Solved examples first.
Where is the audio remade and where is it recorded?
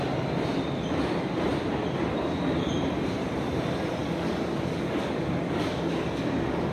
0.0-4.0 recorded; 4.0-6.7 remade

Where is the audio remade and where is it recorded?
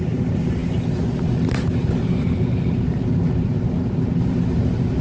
0.0-5.0 recorded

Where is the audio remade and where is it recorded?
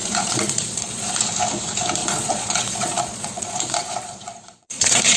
0.0-1.2 remade; 1.2-2.0 recorded; 2.0-5.2 remade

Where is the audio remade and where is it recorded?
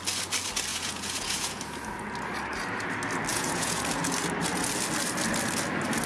0.0-0.7 recorded; 0.7-1.6 remade; 1.6-3.3 recorded; 3.3-3.8 remade; 3.8-6.1 recorded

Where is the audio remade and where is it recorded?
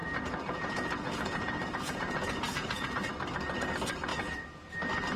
0.0-3.1 remade; 3.1-4.1 recorded; 4.1-4.7 remade; 4.7-5.2 recorded